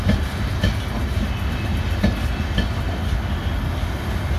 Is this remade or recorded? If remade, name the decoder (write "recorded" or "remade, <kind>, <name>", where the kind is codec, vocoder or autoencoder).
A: recorded